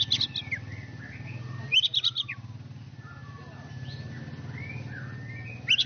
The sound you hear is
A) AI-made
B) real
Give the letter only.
B